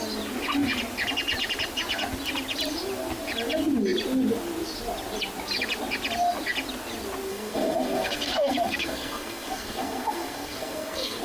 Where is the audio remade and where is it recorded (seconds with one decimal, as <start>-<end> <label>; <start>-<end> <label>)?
0.0-7.3 recorded; 7.3-11.2 remade